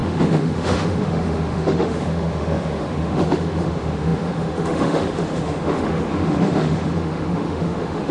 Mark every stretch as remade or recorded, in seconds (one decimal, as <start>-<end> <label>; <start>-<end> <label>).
0.0-8.1 remade

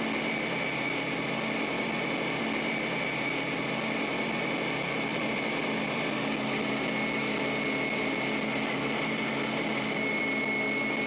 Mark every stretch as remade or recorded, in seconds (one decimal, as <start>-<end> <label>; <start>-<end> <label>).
0.0-5.1 recorded; 5.1-6.0 remade; 6.0-11.1 recorded

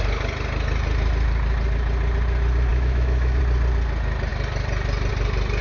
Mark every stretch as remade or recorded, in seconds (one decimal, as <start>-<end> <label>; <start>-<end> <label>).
0.0-2.7 recorded; 2.7-3.4 remade; 3.4-5.6 recorded

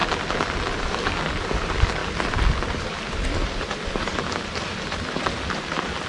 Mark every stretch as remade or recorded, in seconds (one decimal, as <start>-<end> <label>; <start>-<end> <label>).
0.0-0.8 recorded; 0.8-2.0 remade; 2.0-6.1 recorded

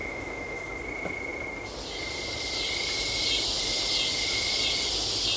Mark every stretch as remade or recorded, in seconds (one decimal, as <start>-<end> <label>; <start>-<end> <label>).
0.0-0.7 remade; 0.7-5.4 recorded

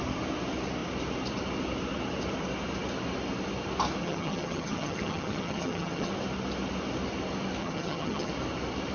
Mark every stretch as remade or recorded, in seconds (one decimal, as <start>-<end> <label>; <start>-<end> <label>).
0.0-4.0 recorded; 4.0-6.1 remade; 6.1-7.6 recorded; 7.6-8.3 remade; 8.3-8.9 recorded

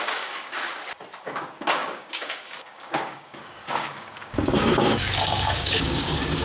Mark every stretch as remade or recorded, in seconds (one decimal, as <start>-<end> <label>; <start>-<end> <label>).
0.0-0.7 remade; 0.7-1.2 recorded; 1.2-6.4 remade

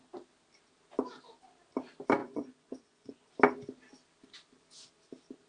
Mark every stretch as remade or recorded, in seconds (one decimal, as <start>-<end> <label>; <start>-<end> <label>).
0.0-2.2 recorded; 2.2-3.3 remade; 3.3-5.5 recorded